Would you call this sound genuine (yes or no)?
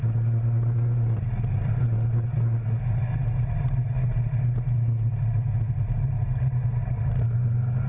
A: yes